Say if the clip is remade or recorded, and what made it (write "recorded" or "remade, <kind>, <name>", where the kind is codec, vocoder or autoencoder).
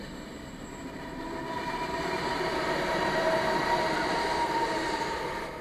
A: remade, vocoder, BigVGAN v2